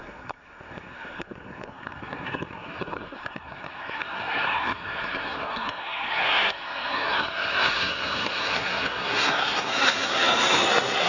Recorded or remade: remade